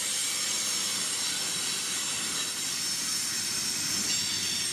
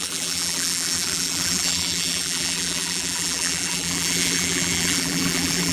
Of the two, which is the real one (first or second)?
first